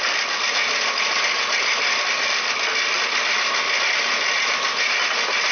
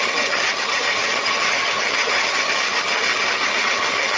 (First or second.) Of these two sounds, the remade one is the second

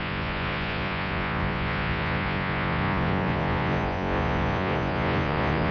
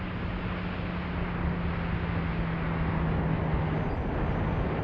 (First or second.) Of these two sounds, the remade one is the first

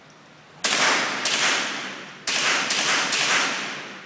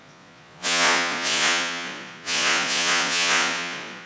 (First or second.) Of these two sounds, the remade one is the second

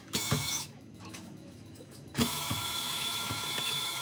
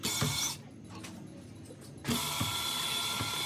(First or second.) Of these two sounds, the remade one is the first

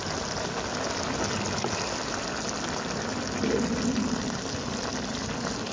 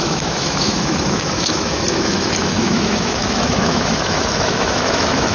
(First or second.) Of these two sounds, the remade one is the second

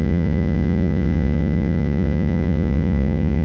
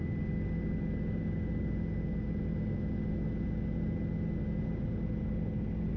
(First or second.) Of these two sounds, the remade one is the first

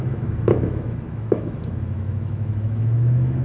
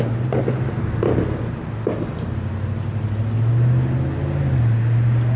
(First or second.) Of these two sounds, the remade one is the first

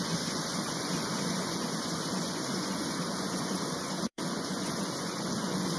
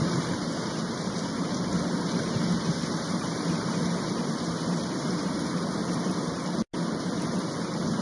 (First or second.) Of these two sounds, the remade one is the first